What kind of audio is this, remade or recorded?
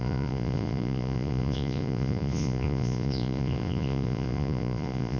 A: remade